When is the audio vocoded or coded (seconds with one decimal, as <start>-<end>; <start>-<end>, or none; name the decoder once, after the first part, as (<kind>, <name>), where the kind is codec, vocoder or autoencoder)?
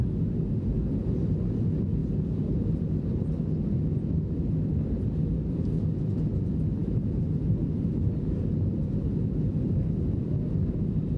6.8-8.5 (vocoder, BigVGAN v2)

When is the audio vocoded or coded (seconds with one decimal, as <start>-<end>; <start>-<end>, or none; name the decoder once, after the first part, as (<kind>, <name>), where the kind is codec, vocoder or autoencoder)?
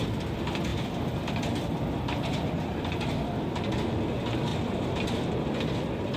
0.7-3.3 (vocoder, BigVGAN v2); 4.5-5.3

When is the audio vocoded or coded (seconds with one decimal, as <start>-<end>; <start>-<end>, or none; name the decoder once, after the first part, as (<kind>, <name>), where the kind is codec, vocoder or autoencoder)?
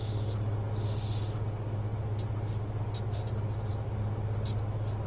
none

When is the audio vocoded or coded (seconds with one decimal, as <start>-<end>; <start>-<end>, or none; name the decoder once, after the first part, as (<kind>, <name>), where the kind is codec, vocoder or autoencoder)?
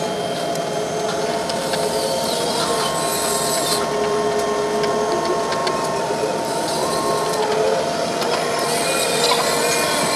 5.6-8.7 (vocoder, BigVGAN v2)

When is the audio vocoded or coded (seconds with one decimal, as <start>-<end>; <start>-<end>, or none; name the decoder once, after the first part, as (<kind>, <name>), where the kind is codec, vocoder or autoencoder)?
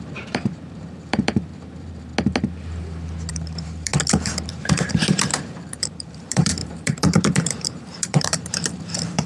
0.0-2.1 (vocoder, BigVGAN v2); 3.3-3.9; 4.5-9.3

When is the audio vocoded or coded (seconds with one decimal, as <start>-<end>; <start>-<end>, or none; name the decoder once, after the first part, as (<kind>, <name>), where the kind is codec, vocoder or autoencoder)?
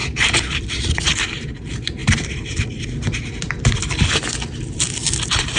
0.0-0.9 (vocoder, BigVGAN v2); 2.0-5.6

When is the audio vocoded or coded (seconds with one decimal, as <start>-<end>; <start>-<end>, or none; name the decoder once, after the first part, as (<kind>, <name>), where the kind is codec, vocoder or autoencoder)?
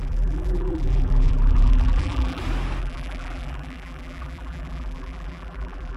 0.0-2.4 (vocoder, BigVGAN v2); 2.8-6.0